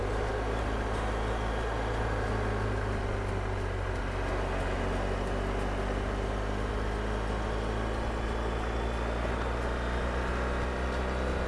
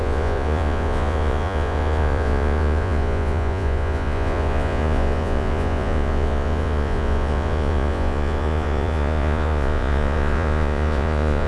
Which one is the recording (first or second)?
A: first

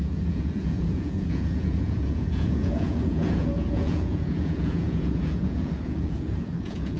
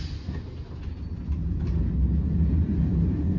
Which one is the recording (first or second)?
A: second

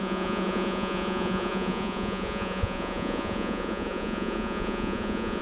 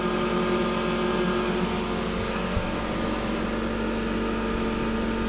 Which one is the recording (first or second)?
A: second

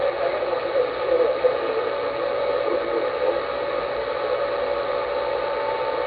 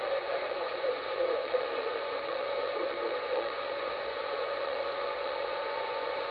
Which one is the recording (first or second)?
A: first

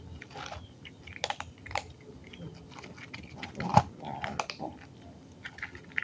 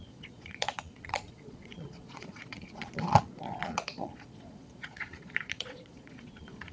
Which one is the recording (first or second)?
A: first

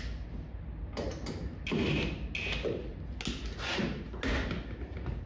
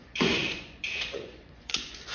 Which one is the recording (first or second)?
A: first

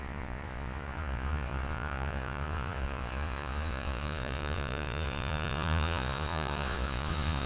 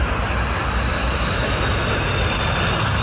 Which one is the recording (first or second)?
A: second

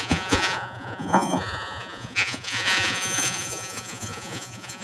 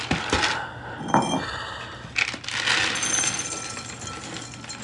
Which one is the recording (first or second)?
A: second